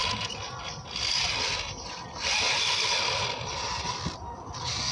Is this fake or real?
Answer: real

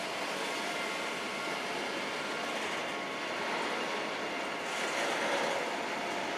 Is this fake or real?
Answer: real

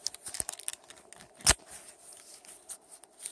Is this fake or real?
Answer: real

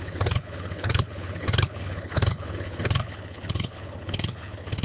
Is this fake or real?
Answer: fake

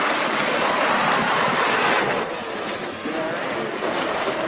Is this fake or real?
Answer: real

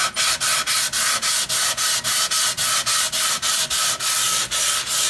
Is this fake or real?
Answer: real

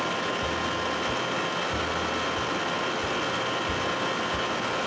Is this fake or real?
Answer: real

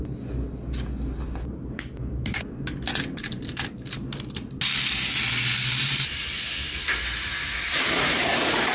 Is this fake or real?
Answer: real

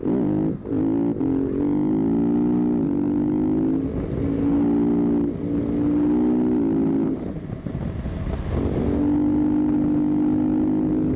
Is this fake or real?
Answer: real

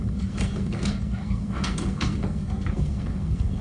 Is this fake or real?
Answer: fake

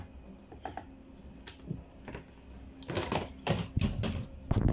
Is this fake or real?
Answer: real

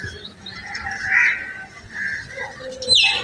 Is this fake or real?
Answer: real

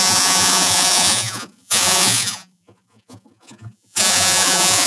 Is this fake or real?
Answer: fake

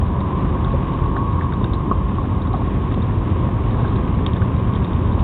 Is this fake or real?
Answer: real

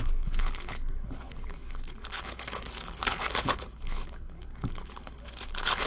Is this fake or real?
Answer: fake